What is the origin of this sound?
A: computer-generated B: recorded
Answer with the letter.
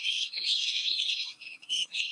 A